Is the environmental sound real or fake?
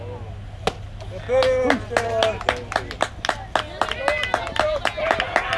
real